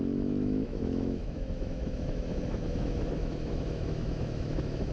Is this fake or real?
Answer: fake